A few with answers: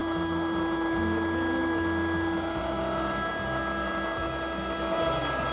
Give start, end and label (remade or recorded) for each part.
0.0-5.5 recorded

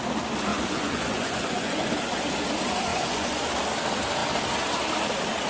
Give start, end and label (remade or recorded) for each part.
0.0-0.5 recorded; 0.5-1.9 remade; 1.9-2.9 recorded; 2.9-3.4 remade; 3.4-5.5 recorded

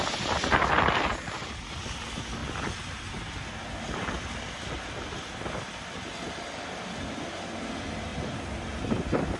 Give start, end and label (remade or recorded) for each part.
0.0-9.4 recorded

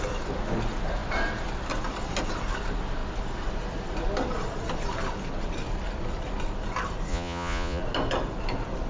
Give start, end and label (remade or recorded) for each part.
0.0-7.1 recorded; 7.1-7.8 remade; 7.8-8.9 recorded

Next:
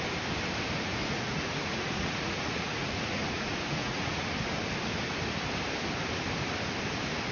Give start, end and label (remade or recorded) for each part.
0.0-1.0 recorded; 1.0-4.3 remade; 4.3-7.3 recorded

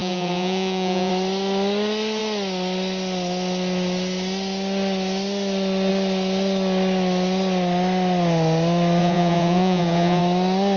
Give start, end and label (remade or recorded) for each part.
0.0-1.1 remade; 1.1-9.0 recorded; 9.0-10.2 remade; 10.2-10.8 recorded

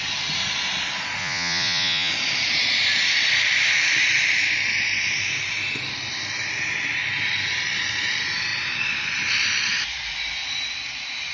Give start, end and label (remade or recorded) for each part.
0.0-1.2 recorded; 1.2-2.1 remade; 2.1-11.3 recorded

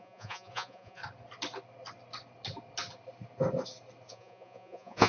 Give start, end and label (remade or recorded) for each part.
0.0-1.0 remade; 1.0-4.1 recorded; 4.1-5.1 remade